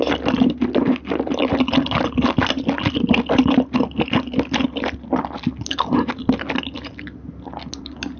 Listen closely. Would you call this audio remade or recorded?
recorded